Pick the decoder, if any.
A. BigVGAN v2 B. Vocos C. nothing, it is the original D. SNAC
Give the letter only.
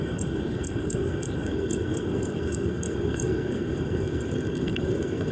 D